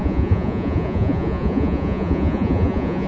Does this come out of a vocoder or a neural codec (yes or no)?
yes